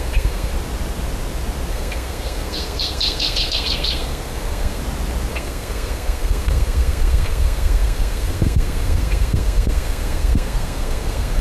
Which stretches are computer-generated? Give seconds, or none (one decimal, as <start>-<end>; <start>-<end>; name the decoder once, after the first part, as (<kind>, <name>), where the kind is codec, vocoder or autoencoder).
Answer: 0.0-0.5 (codec, SNAC); 1.7-4.8; 5.3-11.4

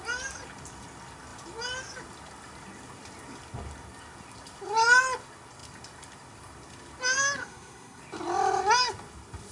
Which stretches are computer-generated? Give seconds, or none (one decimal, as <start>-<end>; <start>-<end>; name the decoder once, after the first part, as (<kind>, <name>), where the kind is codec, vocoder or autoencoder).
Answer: 7.4-8.0 (codec, SNAC)

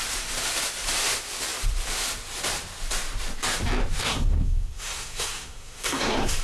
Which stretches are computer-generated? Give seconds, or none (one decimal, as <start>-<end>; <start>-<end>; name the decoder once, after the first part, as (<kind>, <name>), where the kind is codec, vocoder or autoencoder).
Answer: 4.0-6.4 (codec, SNAC)